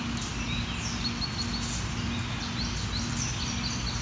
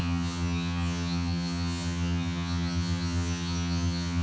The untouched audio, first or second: first